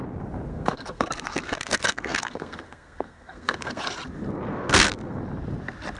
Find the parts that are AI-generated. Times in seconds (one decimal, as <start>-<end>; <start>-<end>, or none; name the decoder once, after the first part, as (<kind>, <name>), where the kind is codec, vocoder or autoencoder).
0.5-3.8 (codec, SNAC); 4.5-5.2